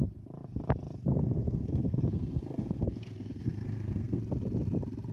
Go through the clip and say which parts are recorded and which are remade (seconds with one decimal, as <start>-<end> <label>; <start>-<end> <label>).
0.0-1.1 recorded; 1.1-4.2 remade; 4.2-5.1 recorded